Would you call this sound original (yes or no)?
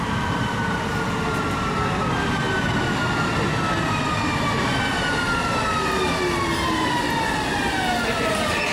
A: yes